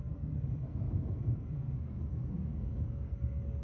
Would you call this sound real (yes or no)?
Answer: no